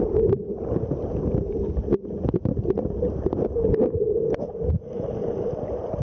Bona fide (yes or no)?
yes